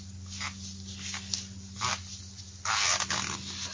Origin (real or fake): real